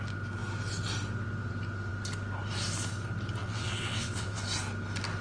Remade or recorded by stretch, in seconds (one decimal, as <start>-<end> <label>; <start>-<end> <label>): 0.0-3.4 recorded; 3.4-4.4 remade; 4.4-5.2 recorded